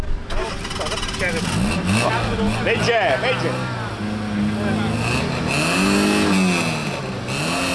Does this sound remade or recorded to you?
recorded